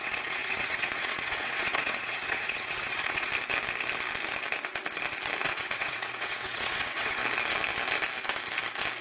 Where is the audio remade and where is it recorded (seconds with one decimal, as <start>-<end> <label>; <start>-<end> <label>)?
0.0-3.3 remade; 3.3-5.5 recorded; 5.5-7.2 remade; 7.2-9.0 recorded